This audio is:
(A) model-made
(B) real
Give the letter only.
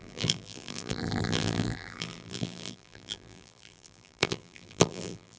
A